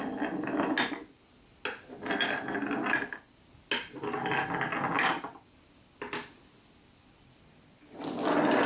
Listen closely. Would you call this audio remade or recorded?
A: recorded